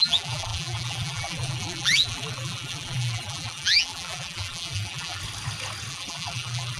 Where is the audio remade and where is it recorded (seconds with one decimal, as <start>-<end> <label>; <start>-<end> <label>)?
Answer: 0.0-5.2 remade; 5.2-5.9 recorded; 5.9-6.8 remade